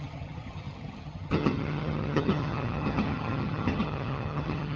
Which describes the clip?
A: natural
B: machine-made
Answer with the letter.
B